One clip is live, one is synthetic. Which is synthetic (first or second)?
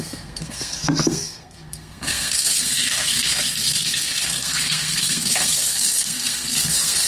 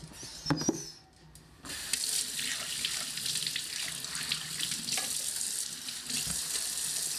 first